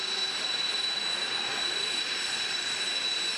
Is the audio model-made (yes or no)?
no